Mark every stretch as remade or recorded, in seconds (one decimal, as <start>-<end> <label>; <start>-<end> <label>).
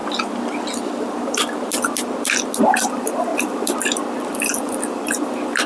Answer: 0.0-2.6 recorded; 2.6-5.7 remade